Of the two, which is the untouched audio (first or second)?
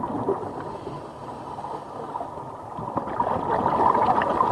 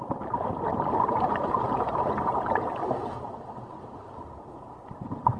first